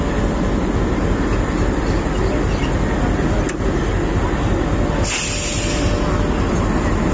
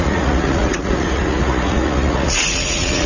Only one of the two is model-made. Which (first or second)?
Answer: second